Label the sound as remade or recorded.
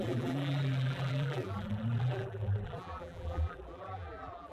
remade